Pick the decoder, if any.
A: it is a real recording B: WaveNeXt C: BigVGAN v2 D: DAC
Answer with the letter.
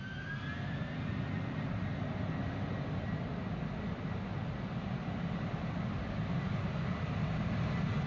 A